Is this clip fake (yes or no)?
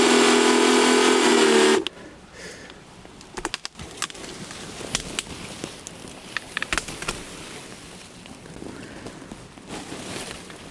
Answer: no